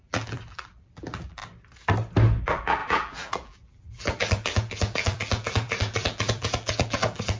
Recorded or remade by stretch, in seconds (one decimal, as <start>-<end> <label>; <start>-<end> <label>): 0.0-1.4 remade; 1.4-2.4 recorded; 2.4-7.4 remade